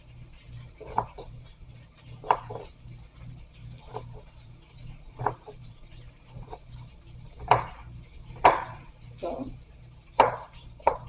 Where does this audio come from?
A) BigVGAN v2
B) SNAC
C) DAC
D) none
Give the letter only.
A